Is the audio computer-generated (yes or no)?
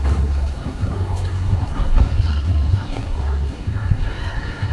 yes